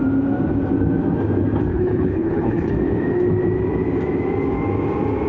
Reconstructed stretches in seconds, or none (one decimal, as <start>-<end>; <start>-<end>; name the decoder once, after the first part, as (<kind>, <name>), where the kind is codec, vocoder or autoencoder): 1.7-2.7 (codec, HILCodec)

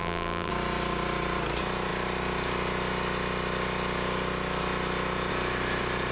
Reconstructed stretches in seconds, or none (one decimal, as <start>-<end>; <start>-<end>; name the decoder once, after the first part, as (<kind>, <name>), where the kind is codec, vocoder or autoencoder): 0.0-0.5 (vocoder, BigVGAN v2)

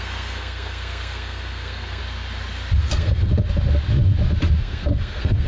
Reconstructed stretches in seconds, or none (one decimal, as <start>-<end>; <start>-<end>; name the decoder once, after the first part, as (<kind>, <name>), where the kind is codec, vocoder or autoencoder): 0.0-2.0 (codec, SNAC); 2.8-3.3; 4.6-5.5

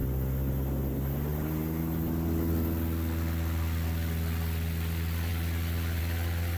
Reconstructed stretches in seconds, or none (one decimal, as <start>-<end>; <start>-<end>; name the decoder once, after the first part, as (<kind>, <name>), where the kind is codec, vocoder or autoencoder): 1.3-1.8 (vocoder, BigVGAN v2)

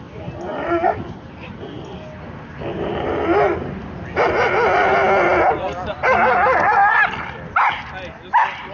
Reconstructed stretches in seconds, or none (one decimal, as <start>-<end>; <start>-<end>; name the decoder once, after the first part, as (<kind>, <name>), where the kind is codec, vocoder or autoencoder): none